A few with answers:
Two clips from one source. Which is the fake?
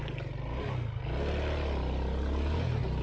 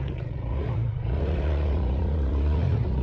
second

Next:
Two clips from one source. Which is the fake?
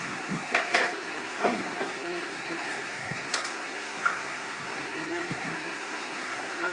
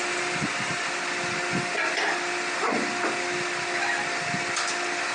first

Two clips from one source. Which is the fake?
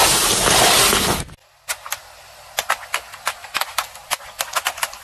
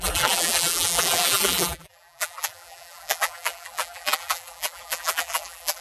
second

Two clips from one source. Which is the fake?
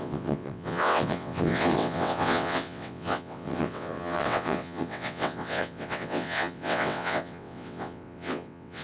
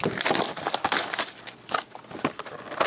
first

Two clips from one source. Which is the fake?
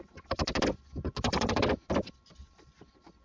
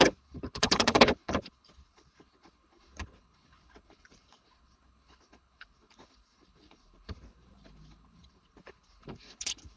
second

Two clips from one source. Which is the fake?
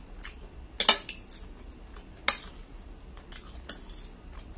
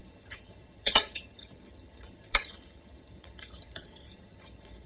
second